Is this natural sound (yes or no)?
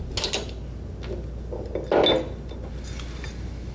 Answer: yes